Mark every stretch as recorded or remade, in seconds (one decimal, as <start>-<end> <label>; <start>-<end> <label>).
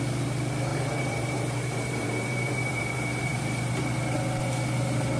0.0-0.7 recorded; 0.7-3.8 remade; 3.8-5.2 recorded